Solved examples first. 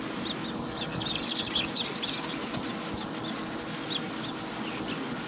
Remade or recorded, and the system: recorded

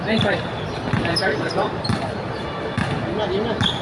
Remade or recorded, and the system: recorded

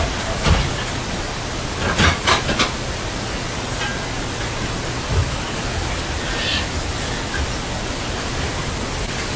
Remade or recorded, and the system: recorded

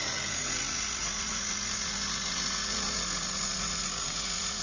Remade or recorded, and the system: remade, vocoder, Vocos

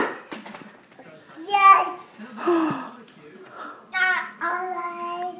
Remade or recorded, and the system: recorded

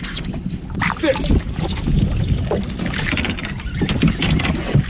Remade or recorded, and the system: recorded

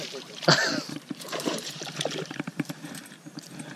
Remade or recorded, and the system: remade, vocoder, BigVGAN v2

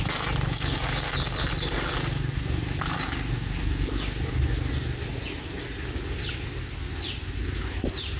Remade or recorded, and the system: recorded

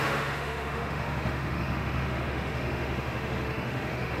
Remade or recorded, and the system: remade, autoencoder, DAC-VAE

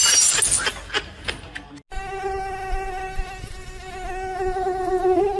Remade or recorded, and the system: recorded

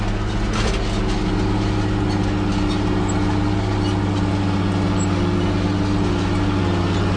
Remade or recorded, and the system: recorded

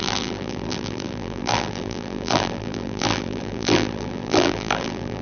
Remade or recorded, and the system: remade, vocoder, BigVGAN v2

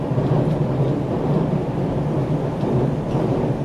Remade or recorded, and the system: recorded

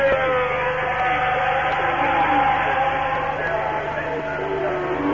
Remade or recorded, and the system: recorded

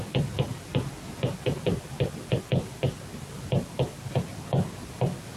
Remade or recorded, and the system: recorded